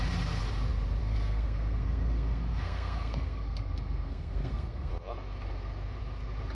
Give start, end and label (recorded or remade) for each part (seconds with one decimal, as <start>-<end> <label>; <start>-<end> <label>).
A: 0.0-1.0 recorded; 1.0-4.9 remade; 4.9-6.5 recorded